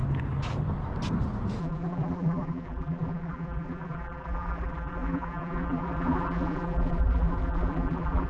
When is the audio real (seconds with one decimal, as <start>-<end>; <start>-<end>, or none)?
0.0-1.6